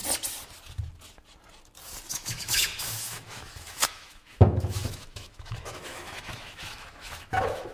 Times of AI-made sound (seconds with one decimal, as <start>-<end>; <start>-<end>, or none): 2.1-7.7